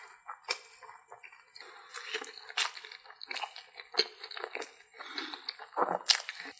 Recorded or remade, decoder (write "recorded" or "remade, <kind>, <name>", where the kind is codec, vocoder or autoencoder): recorded